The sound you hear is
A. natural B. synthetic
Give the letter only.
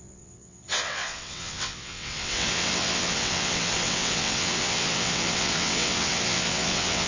B